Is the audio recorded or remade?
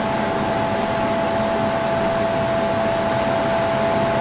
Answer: recorded